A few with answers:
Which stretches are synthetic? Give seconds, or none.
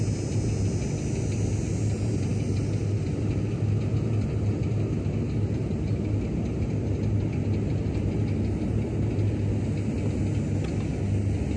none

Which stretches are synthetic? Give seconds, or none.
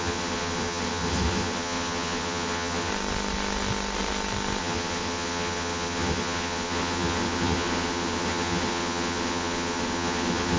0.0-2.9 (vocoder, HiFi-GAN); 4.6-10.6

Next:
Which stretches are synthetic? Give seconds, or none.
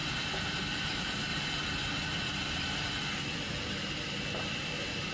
0.9-1.3 (vocoder, BigVGAN v2); 4.4-5.1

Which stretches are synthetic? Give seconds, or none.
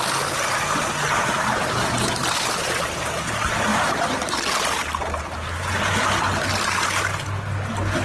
none